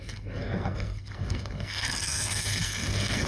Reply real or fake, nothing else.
fake